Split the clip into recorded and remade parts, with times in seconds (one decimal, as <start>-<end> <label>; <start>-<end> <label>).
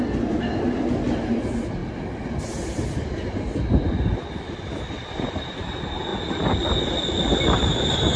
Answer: 0.0-8.2 recorded